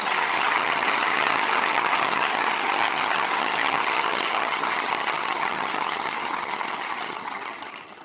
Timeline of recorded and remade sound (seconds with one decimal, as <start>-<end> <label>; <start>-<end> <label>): 0.0-8.0 remade